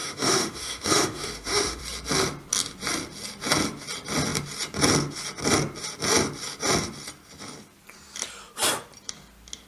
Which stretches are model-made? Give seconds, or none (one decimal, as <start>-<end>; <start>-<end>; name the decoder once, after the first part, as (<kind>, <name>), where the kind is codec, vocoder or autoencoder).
0.0-1.8 (autoencoder, DAC-VAE)